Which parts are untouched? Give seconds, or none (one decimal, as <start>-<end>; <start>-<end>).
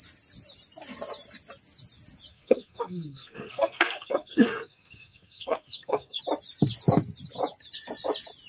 0.0-2.3; 6.2-8.5